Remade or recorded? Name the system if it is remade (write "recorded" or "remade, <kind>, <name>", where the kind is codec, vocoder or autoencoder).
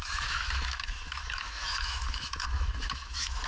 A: remade, autoencoder, DAC-VAE